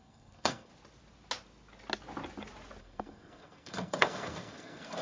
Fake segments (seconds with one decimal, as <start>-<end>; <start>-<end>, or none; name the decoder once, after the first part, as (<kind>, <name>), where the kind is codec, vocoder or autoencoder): 0.0-0.7 (codec, SNAC); 2.8-5.0